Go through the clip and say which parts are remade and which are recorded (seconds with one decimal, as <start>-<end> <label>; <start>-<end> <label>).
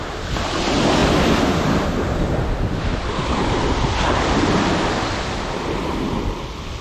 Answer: 0.0-6.8 recorded